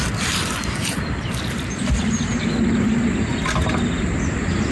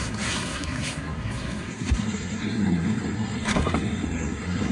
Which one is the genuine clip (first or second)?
first